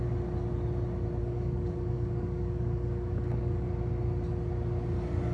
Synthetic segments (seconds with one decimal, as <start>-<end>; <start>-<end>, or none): 1.2-3.7

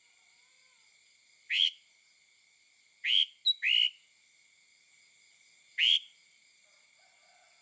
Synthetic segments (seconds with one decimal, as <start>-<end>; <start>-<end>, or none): none

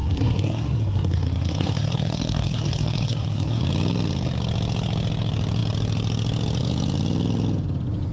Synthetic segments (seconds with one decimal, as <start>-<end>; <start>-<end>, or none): 0.0-3.6

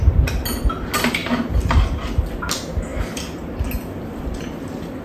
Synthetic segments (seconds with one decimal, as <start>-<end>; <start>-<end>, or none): none

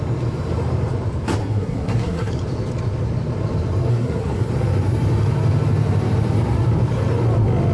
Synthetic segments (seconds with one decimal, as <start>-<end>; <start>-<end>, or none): 1.4-2.3; 3.9-4.5